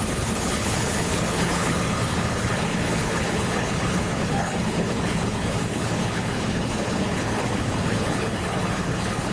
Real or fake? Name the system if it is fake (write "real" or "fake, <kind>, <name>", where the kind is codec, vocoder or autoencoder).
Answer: fake, codec, HILCodec